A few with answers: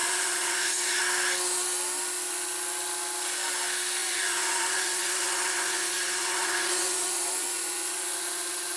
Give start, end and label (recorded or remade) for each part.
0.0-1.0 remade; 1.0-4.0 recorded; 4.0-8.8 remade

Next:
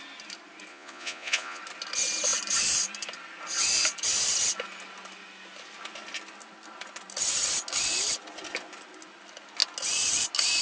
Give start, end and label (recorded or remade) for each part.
0.0-0.7 recorded; 0.7-1.6 remade; 1.6-10.6 recorded

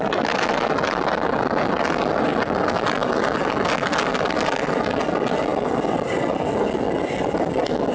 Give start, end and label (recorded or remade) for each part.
0.0-7.9 recorded